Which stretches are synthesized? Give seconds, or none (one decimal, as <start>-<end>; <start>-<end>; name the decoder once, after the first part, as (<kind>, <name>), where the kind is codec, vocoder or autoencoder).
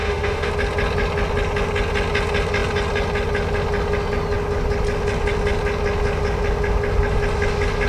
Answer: 0.0-0.5 (autoencoder, DAC-VAE)